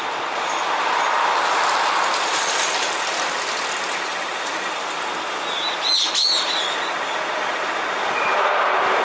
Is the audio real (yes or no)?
yes